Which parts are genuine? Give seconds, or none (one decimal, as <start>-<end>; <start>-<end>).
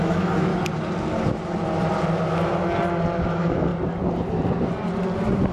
0.5-3.3; 3.7-5.5